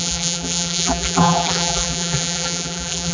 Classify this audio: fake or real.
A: fake